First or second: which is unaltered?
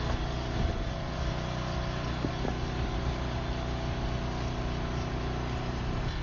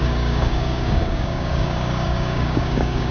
first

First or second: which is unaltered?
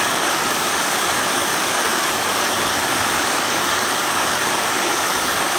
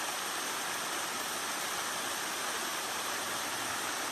second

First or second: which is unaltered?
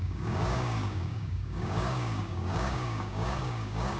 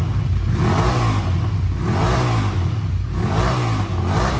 second